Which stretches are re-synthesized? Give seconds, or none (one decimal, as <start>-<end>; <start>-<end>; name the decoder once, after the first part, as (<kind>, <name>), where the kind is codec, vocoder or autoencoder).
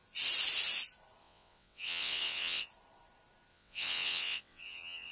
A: 1.2-2.7 (vocoder, WaveNeXt); 3.5-5.1